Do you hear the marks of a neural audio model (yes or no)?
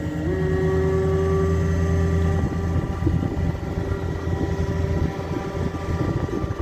no